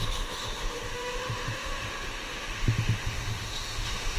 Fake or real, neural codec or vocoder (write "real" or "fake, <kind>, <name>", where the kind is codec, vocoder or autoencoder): fake, autoencoder, DAC-VAE